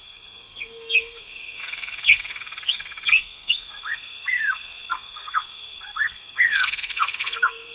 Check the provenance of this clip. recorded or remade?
remade